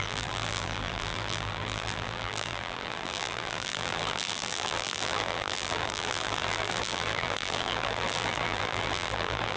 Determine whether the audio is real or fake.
fake